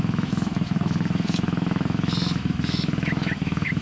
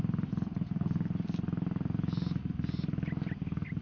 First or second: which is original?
second